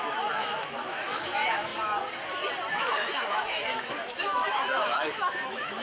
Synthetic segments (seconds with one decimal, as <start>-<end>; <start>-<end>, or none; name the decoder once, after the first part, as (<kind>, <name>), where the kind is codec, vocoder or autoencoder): 0.0-1.7 (autoencoder, DAC-VAE); 2.7-5.8